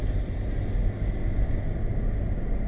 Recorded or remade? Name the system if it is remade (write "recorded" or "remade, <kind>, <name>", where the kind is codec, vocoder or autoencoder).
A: recorded